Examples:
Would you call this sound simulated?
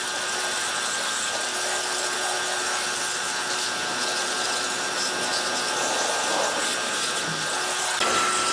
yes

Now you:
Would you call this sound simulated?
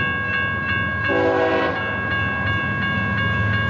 no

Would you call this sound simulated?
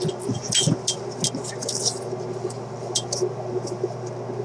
no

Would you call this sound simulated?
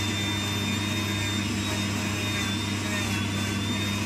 no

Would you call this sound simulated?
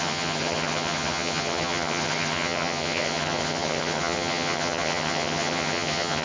yes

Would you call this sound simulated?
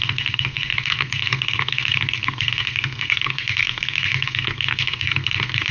yes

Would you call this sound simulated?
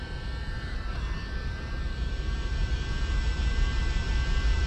no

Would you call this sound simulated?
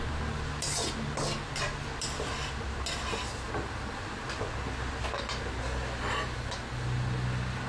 no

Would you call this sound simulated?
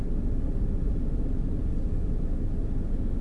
no